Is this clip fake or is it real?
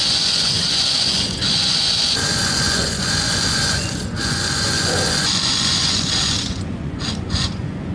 fake